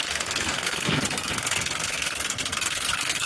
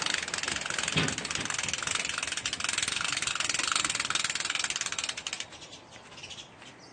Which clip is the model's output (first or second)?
first